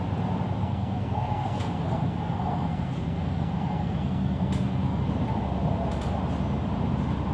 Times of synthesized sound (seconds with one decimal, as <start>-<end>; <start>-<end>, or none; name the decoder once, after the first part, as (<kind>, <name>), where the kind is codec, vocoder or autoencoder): 0.6-5.0 (codec, SNAC)